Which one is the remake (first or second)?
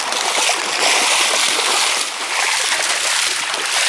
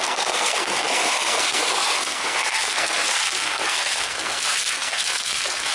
second